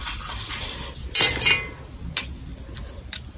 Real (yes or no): yes